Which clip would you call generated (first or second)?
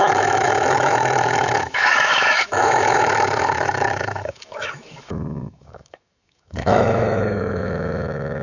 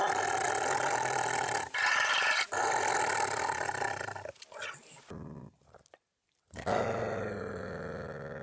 first